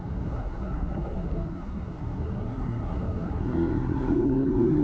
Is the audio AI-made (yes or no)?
yes